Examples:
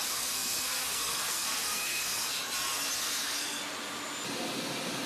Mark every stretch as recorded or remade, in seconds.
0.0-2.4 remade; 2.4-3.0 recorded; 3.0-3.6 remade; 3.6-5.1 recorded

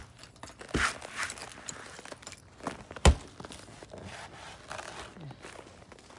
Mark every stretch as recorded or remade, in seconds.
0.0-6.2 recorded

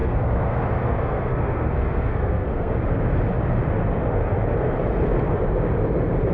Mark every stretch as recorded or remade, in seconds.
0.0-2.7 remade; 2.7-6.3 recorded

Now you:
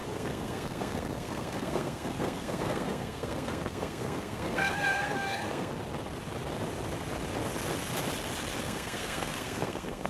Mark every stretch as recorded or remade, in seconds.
0.0-5.7 remade; 5.7-8.6 recorded; 8.6-10.1 remade

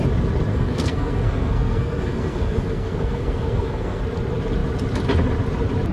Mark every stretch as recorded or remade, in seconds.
0.0-0.5 recorded; 0.5-4.0 remade; 4.0-5.9 recorded